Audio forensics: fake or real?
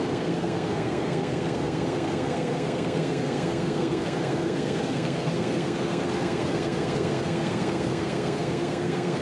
fake